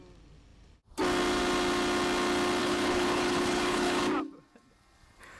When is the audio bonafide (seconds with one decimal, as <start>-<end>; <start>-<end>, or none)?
0.0-2.6; 4.0-5.4